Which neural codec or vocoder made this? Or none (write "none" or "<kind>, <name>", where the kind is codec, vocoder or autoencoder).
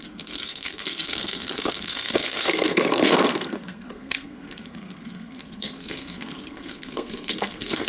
codec, SNAC